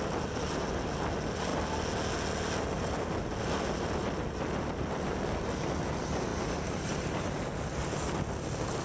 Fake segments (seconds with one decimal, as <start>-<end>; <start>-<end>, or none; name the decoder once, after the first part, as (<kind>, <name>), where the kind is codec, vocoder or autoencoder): none